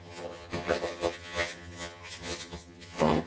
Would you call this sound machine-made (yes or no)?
yes